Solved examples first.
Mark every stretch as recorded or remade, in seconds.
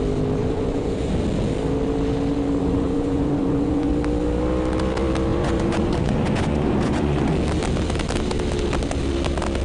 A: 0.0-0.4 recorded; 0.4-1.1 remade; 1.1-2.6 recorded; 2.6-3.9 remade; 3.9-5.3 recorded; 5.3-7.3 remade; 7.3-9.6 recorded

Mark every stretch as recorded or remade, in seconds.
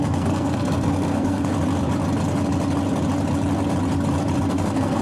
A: 0.0-1.5 remade; 1.5-4.5 recorded; 4.5-5.0 remade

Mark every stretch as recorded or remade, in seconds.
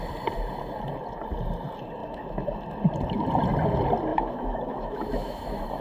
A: 0.0-2.0 recorded; 2.0-2.6 remade; 2.6-4.1 recorded; 4.1-5.8 remade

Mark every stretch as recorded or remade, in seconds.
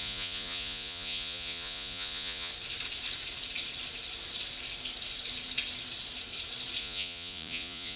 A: 0.0-2.5 remade; 2.5-6.8 recorded; 6.8-8.0 remade